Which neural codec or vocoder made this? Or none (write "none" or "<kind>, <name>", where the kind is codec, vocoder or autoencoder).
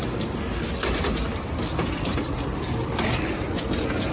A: none